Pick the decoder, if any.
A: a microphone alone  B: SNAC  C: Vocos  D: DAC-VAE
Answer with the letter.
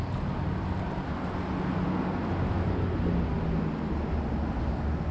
A